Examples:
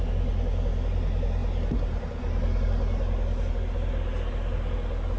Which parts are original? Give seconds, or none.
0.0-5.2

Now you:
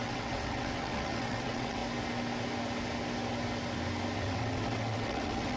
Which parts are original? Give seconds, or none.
1.8-4.2

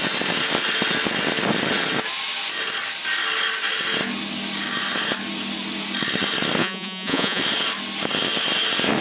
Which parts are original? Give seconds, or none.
0.0-6.6; 7.4-9.0

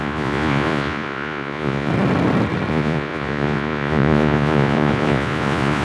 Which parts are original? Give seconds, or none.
1.9-2.7

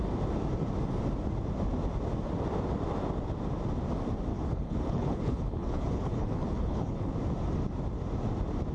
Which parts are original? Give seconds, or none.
0.0-4.3; 7.1-8.7

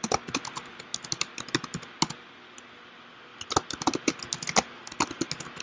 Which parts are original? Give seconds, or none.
0.0-5.6

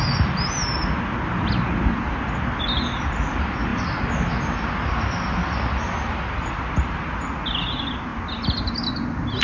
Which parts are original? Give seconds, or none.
0.0-9.4